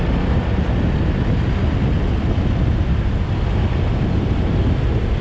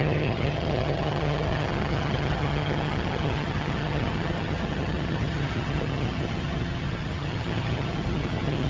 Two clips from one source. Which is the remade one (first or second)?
second